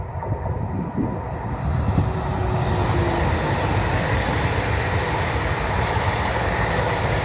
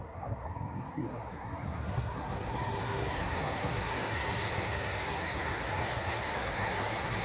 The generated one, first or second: second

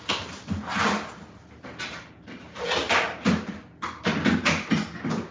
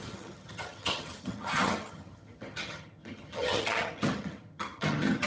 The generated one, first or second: second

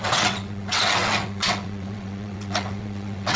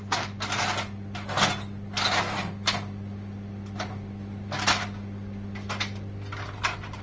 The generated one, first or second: first